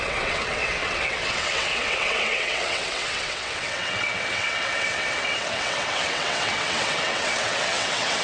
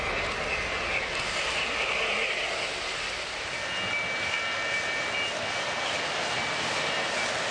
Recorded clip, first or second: second